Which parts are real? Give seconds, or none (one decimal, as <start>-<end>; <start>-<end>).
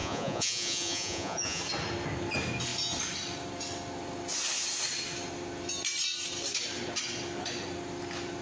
1.6-8.4